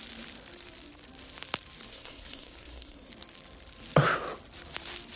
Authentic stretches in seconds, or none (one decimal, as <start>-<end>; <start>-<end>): 0.0-1.9; 3.1-5.2